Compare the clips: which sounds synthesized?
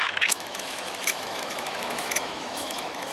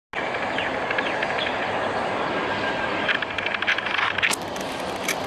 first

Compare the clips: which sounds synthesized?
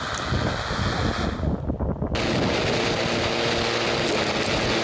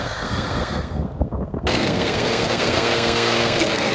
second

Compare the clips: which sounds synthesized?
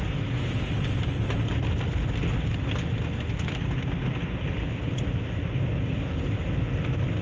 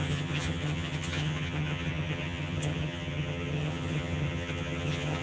second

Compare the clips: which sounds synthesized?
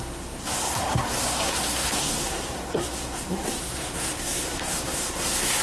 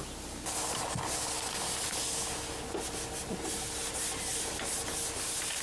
first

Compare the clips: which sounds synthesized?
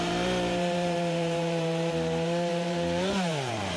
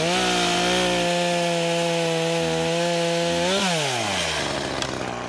first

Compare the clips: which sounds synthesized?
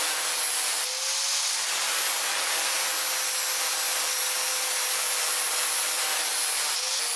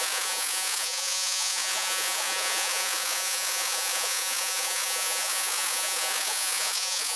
second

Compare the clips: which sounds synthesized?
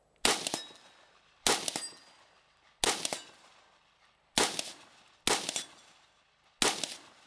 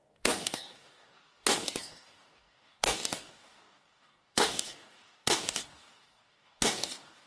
second